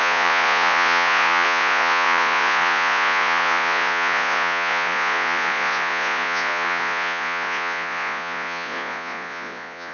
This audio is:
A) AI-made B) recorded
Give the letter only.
A